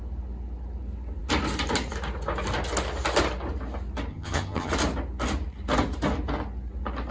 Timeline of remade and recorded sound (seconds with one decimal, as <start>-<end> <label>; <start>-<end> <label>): 0.0-4.1 recorded; 4.1-4.7 remade; 4.7-7.1 recorded